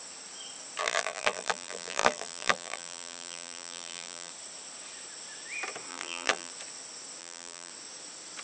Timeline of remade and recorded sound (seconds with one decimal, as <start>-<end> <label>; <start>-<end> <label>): 0.0-0.8 recorded; 0.8-4.3 remade; 4.3-5.9 recorded; 5.9-6.5 remade; 6.5-7.2 recorded; 7.2-7.7 remade; 7.7-8.4 recorded